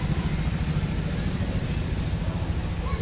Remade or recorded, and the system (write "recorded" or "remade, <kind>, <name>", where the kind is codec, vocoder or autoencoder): recorded